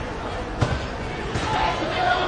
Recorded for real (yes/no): no